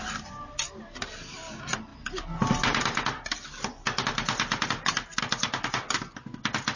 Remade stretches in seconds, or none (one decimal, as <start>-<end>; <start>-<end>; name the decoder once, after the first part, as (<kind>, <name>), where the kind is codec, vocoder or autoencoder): none